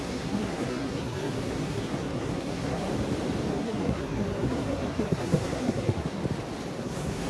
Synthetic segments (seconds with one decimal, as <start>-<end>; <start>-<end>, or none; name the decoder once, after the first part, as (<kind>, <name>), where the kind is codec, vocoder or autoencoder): 0.0-2.9 (codec, SNAC); 3.5-6.2; 6.8-7.3